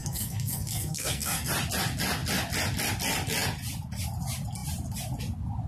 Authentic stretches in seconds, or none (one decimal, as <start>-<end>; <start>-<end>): 1.5-5.7